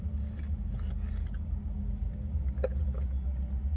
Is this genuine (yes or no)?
yes